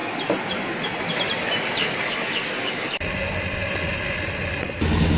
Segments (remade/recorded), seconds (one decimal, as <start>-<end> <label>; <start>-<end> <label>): 0.0-5.2 recorded